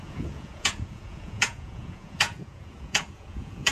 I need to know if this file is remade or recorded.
remade